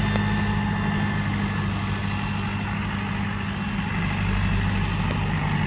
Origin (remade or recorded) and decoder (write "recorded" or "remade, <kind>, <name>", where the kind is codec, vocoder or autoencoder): recorded